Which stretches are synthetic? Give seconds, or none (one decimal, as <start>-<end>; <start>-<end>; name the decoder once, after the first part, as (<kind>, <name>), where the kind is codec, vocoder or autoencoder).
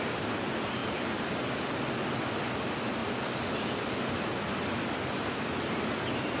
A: 0.8-1.3 (vocoder, BigVGAN v2)